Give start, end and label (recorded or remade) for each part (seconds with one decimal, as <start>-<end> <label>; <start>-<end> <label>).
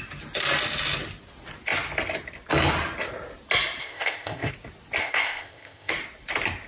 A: 0.0-3.8 recorded; 3.8-4.5 remade; 4.5-5.0 recorded; 5.0-5.9 remade; 5.9-6.7 recorded